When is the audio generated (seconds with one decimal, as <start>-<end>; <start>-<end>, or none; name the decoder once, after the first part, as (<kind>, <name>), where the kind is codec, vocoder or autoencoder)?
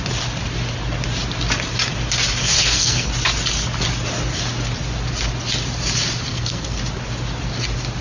2.4-3.1 (codec, SNAC); 6.3-6.8